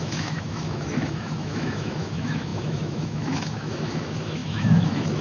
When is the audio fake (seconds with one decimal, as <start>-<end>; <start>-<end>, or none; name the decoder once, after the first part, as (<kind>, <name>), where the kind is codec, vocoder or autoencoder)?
0.0-5.2 (autoencoder, DAC-VAE)